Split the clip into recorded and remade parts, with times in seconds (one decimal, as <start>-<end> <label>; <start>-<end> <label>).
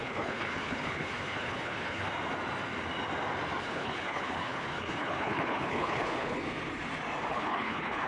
0.0-2.0 remade; 2.0-3.6 recorded; 3.6-6.4 remade; 6.4-7.3 recorded; 7.3-8.1 remade